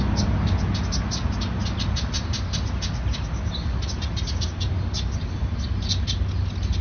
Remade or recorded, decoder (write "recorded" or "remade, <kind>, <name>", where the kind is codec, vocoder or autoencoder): recorded